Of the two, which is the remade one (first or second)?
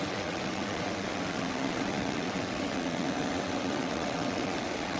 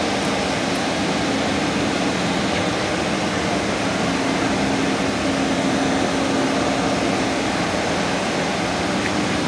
first